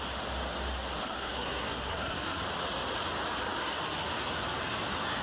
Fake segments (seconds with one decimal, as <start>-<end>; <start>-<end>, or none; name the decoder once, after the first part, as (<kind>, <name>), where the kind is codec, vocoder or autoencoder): 1.0-2.4 (codec, SNAC)